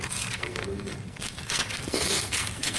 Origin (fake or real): fake